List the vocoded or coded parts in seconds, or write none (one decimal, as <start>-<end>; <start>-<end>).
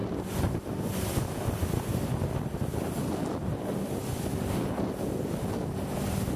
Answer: none